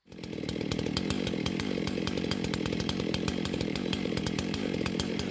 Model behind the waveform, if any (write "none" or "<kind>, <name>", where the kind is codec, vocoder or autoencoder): vocoder, BigVGAN v2